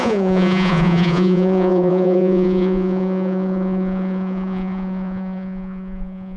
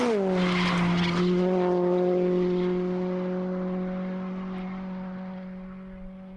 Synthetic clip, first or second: first